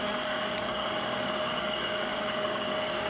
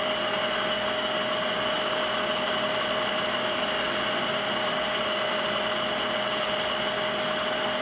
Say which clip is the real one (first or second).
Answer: second